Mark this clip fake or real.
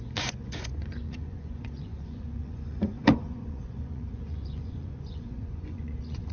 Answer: fake